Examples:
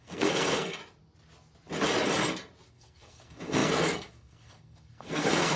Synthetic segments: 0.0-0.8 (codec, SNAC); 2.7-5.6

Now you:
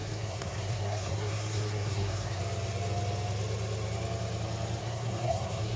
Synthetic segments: 0.0-2.4 (codec, SNAC); 4.8-5.8